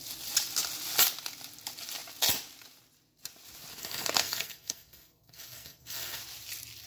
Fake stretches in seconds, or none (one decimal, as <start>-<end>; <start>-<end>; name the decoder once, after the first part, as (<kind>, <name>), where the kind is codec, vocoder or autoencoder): 3.8-6.2 (codec, SNAC)